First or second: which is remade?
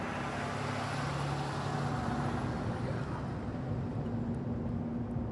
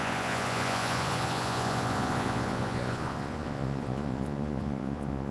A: second